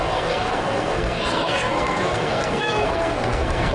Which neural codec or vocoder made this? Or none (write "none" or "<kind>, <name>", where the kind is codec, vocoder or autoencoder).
codec, SNAC